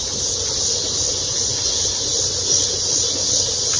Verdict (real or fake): real